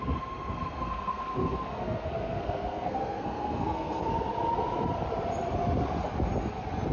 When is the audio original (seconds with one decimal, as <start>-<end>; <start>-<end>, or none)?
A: 4.1-6.9